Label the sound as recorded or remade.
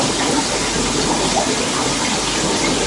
recorded